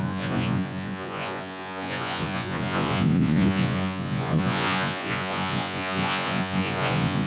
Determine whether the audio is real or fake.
fake